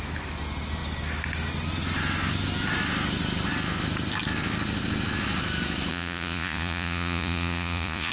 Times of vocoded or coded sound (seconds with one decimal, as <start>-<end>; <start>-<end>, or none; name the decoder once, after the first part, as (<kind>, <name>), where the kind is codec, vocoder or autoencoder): 5.9-8.1 (vocoder, Vocos)